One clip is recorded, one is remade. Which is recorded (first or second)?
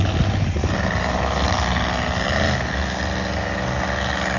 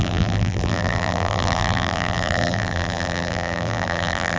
first